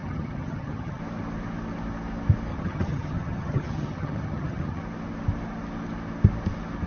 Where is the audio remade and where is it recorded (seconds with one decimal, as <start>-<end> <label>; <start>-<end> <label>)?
0.0-1.0 remade; 1.0-2.5 recorded; 2.5-4.8 remade; 4.8-6.9 recorded